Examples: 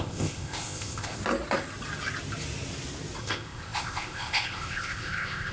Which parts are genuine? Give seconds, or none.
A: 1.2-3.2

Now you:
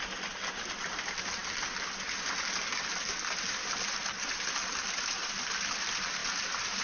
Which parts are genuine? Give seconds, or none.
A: 0.0-6.8